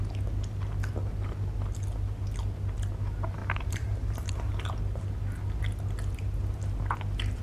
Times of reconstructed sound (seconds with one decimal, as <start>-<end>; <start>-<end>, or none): 3.4-4.7